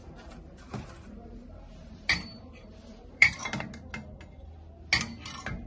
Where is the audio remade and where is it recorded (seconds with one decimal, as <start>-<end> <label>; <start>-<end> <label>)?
0.0-3.4 remade; 3.4-5.7 recorded